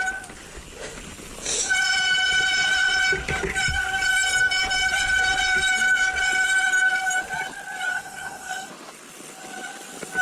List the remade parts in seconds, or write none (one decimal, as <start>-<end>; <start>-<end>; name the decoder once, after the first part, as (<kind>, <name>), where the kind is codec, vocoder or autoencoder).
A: 7.9-8.7 (codec, DAC)